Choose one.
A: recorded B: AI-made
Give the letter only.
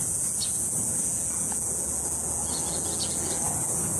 A